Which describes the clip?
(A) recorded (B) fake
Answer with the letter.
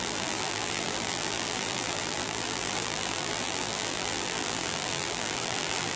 B